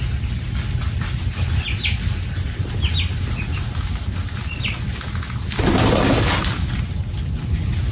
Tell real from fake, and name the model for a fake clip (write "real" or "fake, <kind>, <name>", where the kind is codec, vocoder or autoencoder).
real